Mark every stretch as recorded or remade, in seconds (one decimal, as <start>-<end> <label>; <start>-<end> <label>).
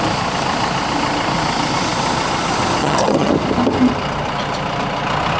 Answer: 0.0-2.8 recorded; 2.8-3.3 remade; 3.3-5.4 recorded